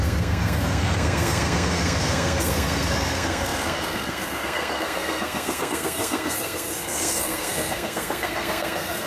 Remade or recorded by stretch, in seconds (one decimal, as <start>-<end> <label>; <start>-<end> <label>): 0.0-9.1 remade